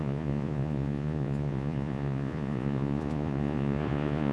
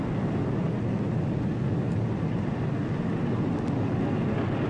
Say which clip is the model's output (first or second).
first